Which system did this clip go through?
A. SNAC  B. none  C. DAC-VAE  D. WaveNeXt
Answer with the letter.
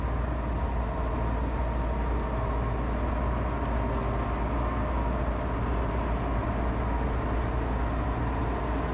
B